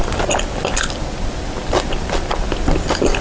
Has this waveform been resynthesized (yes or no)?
no